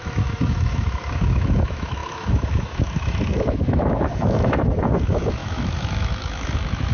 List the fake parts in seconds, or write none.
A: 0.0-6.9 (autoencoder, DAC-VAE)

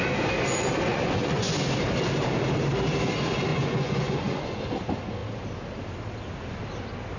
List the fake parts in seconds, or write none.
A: 0.9-1.5 (vocoder, Vocos); 3.5-4.6

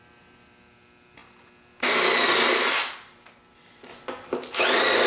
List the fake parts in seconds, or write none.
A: none

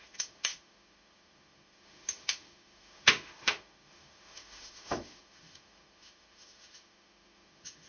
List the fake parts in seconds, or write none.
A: 0.0-7.9 (autoencoder, DAC-VAE)